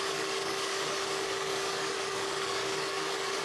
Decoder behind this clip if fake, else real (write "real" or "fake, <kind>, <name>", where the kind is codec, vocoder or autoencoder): fake, codec, DAC